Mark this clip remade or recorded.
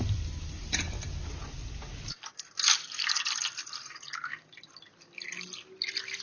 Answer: recorded